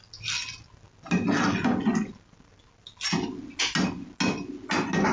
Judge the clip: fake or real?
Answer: real